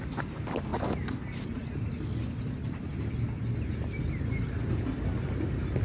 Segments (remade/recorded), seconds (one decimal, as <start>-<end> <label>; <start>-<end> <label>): 0.0-5.8 recorded